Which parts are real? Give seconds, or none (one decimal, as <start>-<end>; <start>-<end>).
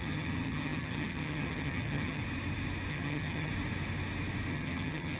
2.2-2.9; 3.5-4.5